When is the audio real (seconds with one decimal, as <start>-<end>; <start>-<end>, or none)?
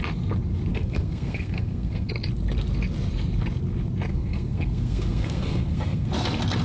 0.0-0.7; 2.1-4.1; 6.1-6.6